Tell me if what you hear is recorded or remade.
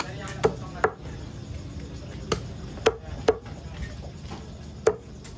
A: recorded